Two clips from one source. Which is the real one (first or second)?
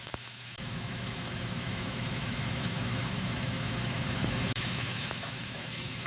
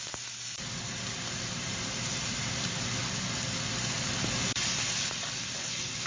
second